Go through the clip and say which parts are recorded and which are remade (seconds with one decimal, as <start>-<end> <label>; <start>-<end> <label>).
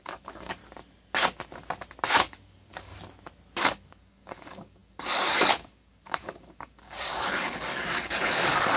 0.0-0.6 remade; 0.6-2.1 recorded; 2.1-2.9 remade; 2.9-3.6 recorded; 3.6-8.8 remade